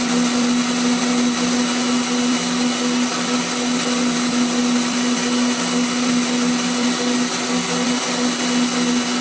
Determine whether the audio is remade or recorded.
recorded